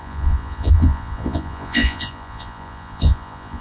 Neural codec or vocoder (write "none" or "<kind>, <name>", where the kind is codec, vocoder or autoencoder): vocoder, Vocos